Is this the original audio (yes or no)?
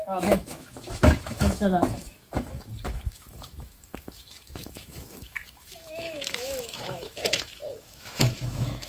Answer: no